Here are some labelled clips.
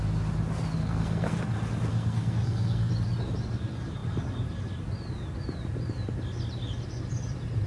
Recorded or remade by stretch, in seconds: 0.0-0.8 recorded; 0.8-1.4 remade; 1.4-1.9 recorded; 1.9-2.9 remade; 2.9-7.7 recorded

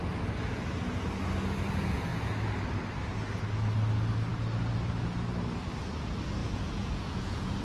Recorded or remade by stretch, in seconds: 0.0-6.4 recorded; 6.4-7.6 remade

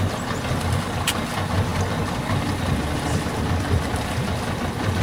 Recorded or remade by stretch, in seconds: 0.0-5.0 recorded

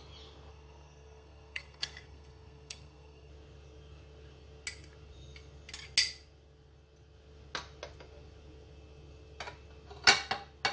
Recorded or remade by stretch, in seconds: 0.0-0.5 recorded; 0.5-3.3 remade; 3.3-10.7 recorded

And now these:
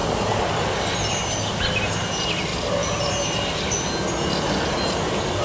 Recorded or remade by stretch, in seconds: 0.0-5.4 recorded

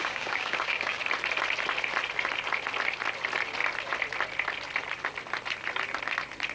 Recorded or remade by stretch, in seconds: 0.0-1.0 remade; 1.0-6.5 recorded

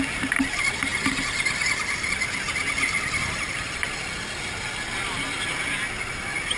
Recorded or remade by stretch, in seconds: 0.0-6.6 recorded